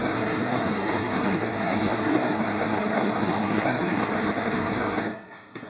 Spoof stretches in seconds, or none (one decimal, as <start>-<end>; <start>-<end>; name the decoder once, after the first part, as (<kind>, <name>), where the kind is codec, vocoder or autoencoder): 0.0-5.7 (codec, SNAC)